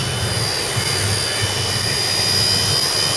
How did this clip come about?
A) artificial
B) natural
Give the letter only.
B